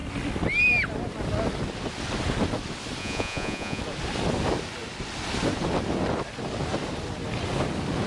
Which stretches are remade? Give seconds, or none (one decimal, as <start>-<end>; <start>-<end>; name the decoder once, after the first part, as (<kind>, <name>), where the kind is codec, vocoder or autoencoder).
3.0-3.8 (vocoder, Vocos)